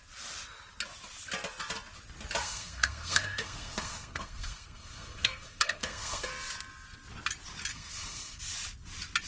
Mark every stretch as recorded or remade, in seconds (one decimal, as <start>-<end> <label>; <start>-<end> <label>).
0.0-2.4 recorded; 2.4-6.3 remade; 6.3-7.7 recorded; 7.7-8.4 remade; 8.4-9.3 recorded